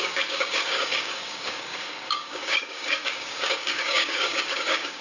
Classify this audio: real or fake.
fake